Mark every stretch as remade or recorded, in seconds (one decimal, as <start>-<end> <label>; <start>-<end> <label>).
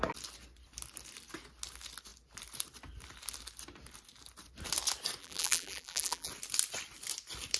0.0-5.2 recorded; 5.2-6.3 remade; 6.3-7.6 recorded